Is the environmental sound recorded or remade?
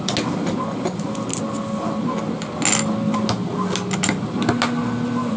recorded